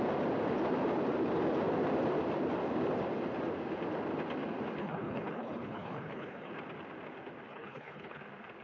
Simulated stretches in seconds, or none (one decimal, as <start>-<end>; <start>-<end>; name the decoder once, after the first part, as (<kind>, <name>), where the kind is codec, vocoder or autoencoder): 4.8-6.5 (codec, HILCodec); 7.5-8.2